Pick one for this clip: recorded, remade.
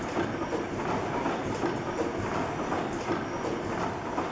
recorded